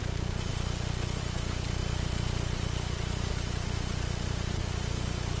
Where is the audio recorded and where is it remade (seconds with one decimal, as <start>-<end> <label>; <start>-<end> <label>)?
0.0-0.5 remade; 0.5-1.2 recorded; 1.2-1.8 remade; 1.8-3.0 recorded; 3.0-5.4 remade